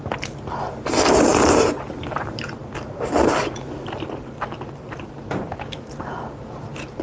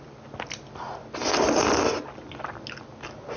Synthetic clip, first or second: first